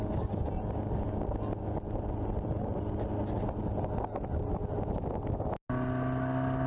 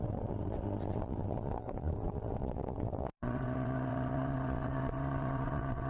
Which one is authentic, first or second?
first